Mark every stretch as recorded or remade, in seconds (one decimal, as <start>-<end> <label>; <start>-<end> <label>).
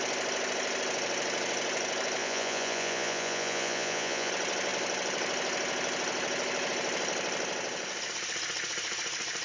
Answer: 0.0-2.2 recorded; 2.2-4.3 remade; 4.3-9.4 recorded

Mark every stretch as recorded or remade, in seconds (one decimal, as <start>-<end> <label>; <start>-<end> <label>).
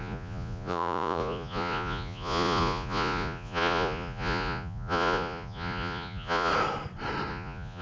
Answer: 0.0-6.5 remade; 6.5-7.3 recorded; 7.3-7.8 remade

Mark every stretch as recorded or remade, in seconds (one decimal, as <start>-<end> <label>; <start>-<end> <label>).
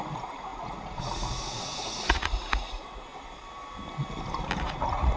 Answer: 0.0-3.1 remade; 3.1-4.6 recorded; 4.6-5.2 remade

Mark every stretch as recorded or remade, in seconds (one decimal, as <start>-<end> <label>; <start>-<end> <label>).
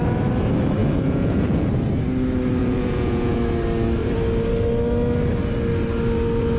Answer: 0.0-0.8 recorded; 0.8-1.7 remade; 1.7-2.6 recorded; 2.6-3.4 remade; 3.4-6.6 recorded